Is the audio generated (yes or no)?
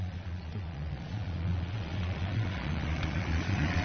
yes